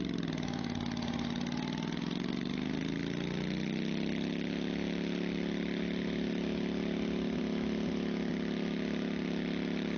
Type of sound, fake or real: real